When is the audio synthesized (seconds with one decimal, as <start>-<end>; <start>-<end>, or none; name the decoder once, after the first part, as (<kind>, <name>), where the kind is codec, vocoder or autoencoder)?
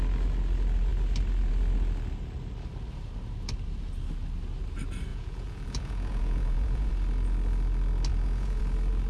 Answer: 5.1-6.9 (vocoder, Vocos); 8.1-8.6